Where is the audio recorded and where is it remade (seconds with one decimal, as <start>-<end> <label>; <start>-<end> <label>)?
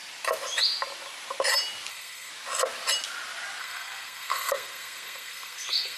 0.0-1.9 recorded; 1.9-2.3 remade; 2.3-3.6 recorded; 3.6-6.0 remade